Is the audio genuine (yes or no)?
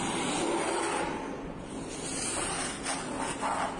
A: yes